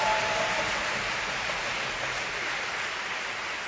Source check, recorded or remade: recorded